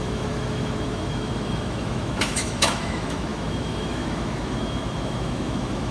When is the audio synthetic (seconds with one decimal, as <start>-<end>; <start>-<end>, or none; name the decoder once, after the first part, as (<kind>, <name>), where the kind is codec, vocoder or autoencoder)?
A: 0.0-5.9 (autoencoder, DAC-VAE)